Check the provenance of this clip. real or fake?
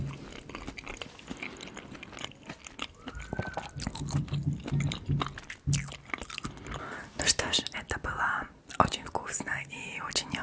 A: real